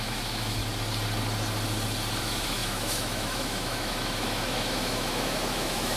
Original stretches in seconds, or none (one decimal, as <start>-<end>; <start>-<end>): 0.6-2.2